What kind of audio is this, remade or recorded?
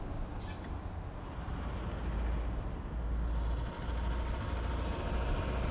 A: recorded